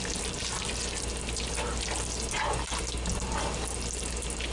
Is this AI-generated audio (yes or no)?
no